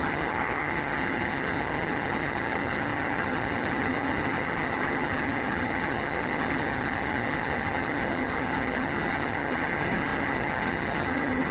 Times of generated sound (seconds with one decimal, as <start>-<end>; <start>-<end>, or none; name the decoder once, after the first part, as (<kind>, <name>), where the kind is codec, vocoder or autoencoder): 0.0-11.5 (vocoder, HiFi-GAN)